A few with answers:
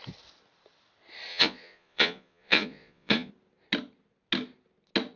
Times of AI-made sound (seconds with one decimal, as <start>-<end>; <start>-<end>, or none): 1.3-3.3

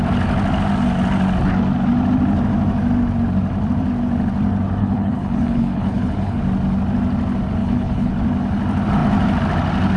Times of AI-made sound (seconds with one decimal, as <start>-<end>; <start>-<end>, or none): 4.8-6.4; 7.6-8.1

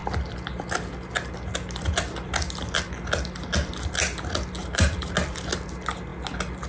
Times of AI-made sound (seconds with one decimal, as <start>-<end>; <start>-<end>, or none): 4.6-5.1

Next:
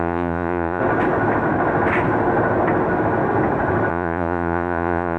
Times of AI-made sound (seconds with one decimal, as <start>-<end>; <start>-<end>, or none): 0.0-0.8; 3.9-5.2

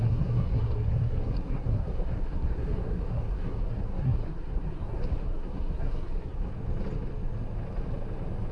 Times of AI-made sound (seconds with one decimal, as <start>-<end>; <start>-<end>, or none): 0.0-6.5